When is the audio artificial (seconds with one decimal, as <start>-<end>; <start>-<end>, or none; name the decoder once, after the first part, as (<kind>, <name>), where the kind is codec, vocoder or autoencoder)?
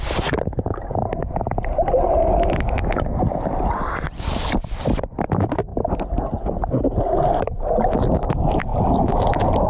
none